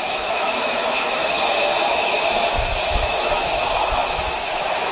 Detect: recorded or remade remade